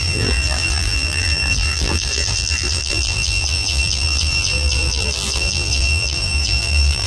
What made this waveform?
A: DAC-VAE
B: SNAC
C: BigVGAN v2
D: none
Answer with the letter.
C